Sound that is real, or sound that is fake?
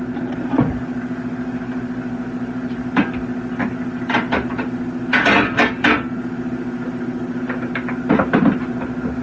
real